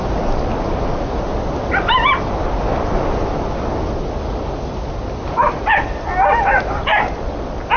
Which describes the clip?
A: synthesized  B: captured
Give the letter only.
B